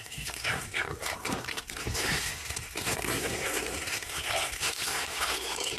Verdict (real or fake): fake